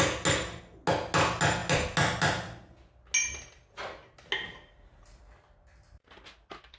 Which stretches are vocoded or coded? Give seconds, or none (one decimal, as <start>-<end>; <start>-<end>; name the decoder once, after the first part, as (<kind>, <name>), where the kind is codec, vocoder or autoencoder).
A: none